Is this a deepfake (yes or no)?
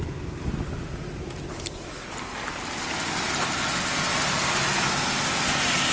no